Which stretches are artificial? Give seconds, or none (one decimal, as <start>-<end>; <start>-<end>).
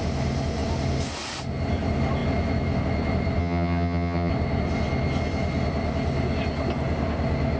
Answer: 3.4-4.3